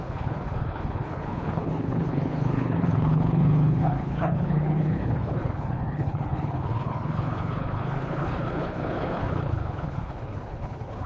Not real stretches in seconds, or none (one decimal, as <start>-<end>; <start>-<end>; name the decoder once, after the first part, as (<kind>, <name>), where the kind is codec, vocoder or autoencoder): 0.0-11.1 (codec, HILCodec)